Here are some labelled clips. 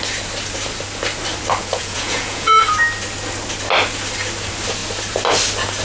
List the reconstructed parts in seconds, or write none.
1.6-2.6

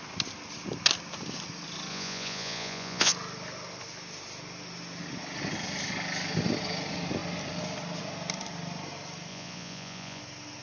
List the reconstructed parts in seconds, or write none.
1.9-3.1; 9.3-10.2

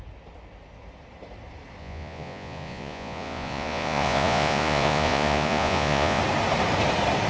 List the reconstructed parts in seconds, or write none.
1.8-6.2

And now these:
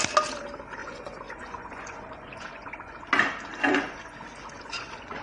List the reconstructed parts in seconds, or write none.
0.8-3.0; 3.7-5.2

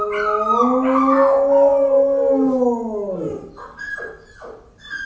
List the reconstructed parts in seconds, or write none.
none

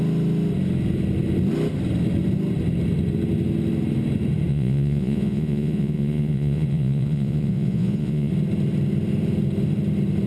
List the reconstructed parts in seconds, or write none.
4.5-8.3